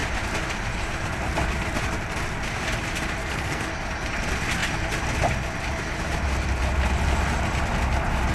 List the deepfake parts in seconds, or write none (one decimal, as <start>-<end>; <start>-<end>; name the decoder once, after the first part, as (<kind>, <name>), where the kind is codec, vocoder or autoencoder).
3.2-3.7 (codec, SNAC)